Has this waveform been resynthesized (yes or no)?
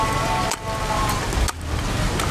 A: no